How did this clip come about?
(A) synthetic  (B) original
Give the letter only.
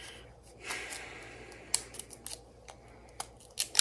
B